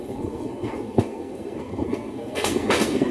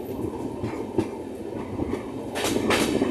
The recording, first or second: second